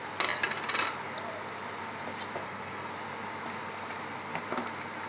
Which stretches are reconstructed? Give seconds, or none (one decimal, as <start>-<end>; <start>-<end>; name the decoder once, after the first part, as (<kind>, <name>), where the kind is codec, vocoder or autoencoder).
2.4-2.9 (codec, SNAC)